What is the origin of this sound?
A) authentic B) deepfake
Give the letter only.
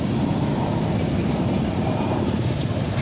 A